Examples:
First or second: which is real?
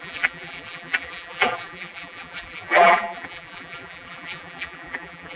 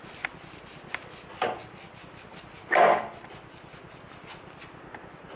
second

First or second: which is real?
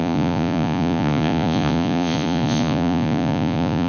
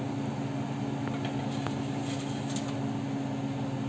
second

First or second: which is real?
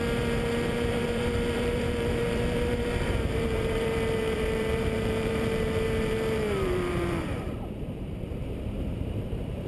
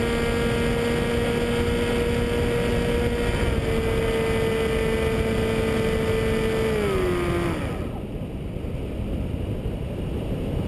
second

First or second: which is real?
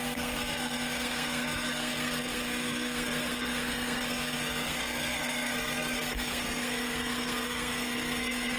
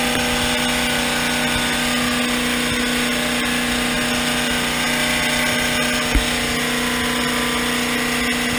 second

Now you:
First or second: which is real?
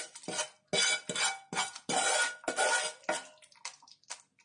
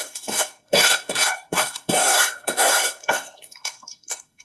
first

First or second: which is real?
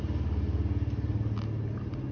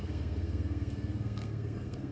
first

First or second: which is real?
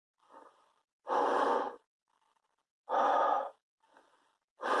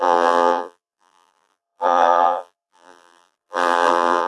first